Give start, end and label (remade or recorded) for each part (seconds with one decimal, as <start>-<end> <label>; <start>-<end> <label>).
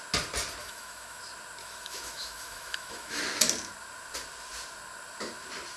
0.0-0.6 recorded; 0.6-1.2 remade; 1.2-1.6 recorded; 1.6-3.2 remade; 3.2-5.8 recorded